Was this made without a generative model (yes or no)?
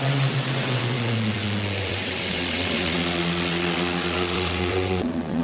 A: no